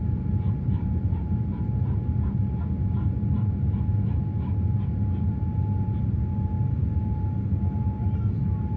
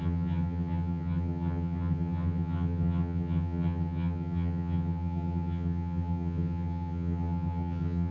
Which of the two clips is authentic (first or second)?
first